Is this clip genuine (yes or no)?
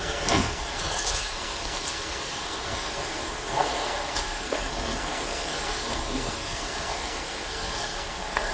no